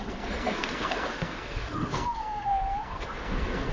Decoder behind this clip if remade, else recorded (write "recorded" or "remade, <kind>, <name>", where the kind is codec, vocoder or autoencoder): remade, codec, SNAC